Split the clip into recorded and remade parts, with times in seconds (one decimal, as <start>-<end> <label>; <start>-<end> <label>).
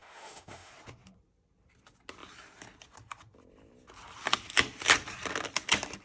0.0-0.7 remade; 0.7-6.0 recorded